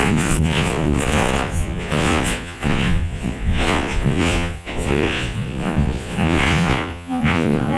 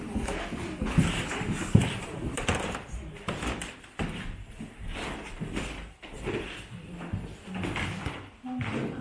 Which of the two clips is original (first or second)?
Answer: second